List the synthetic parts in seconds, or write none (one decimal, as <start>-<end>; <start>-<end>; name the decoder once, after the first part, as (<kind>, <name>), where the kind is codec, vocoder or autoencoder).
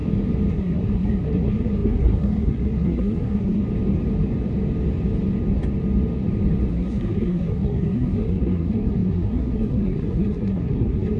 0.5-3.6 (codec, SNAC); 6.7-11.2